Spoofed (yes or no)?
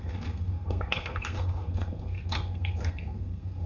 yes